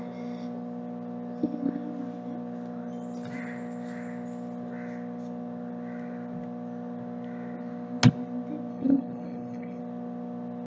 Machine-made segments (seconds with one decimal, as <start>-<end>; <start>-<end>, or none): 8.7-9.8